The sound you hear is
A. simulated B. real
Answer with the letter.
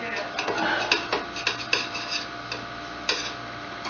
B